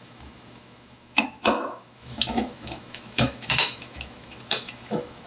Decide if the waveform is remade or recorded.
remade